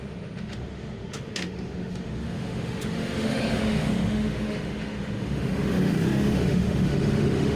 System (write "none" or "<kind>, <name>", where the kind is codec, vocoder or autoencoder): autoencoder, DAC-VAE